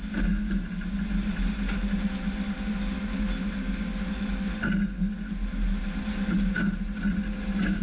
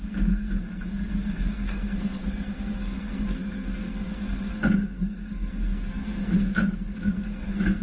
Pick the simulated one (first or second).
second